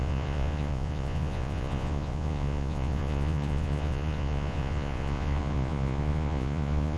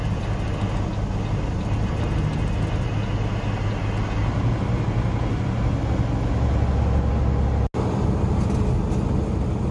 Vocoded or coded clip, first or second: first